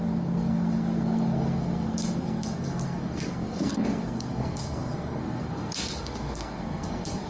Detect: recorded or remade remade